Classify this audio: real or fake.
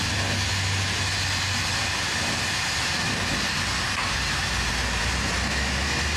real